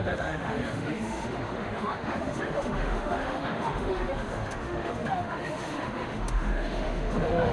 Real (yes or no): no